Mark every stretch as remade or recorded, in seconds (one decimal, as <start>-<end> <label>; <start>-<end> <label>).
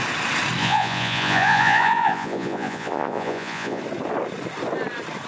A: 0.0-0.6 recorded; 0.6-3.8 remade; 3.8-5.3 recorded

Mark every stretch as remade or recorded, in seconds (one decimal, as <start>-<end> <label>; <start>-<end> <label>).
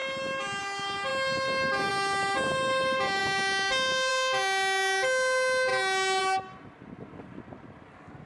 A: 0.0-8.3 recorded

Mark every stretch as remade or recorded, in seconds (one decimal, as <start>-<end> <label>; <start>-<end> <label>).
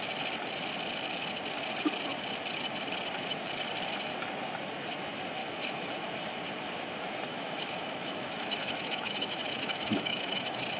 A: 0.0-5.4 recorded; 5.4-5.9 remade; 5.9-7.3 recorded; 7.3-10.8 remade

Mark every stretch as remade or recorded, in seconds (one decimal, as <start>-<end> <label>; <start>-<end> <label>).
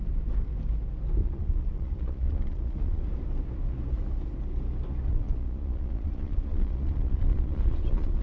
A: 0.0-1.2 recorded; 1.2-3.0 remade; 3.0-5.1 recorded; 5.1-8.2 remade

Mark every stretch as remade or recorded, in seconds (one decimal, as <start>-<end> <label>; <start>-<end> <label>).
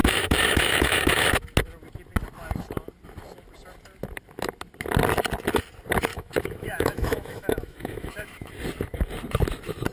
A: 0.0-1.4 remade; 1.4-6.1 recorded; 6.1-8.5 remade; 8.5-9.9 recorded